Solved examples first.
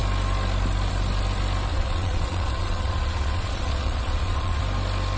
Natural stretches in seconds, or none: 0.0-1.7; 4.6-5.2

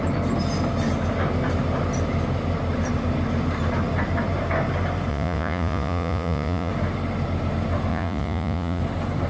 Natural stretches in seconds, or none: 0.0-5.1; 6.7-7.9; 8.8-9.3